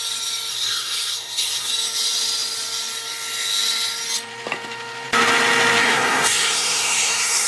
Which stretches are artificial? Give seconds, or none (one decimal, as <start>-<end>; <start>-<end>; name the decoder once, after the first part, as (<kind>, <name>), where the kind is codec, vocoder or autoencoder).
0.5-1.7 (codec, SNAC); 5.8-7.5